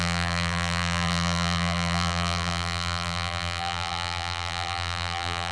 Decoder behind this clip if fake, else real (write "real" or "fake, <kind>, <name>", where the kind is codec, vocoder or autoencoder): fake, vocoder, BigVGAN v2